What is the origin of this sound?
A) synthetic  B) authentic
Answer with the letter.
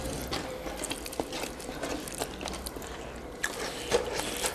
A